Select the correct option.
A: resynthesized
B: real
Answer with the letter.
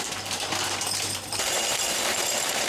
A